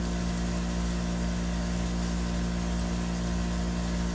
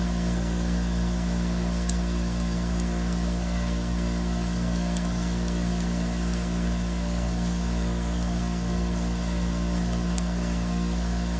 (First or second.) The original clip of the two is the first